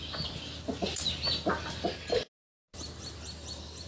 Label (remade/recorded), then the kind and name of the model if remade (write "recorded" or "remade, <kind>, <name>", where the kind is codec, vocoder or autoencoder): recorded